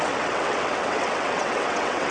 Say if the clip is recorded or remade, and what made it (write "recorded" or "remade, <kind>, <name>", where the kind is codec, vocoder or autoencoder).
remade, vocoder, WaveNeXt